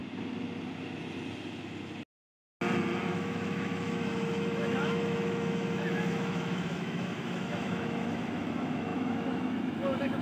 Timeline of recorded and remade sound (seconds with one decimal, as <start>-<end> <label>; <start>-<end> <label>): 0.0-3.0 recorded; 3.0-10.2 remade